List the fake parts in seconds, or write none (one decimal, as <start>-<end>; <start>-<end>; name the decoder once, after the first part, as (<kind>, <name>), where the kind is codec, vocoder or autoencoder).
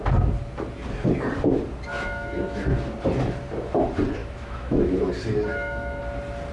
1.9-2.6 (autoencoder, DAC-VAE); 4.2-5.1; 5.5-6.0